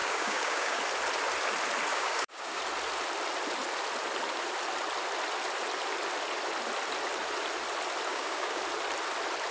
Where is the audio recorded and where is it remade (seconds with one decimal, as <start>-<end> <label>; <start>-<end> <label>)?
0.0-0.8 remade; 0.8-1.9 recorded; 1.9-2.6 remade; 2.6-8.1 recorded; 8.1-8.6 remade; 8.6-9.5 recorded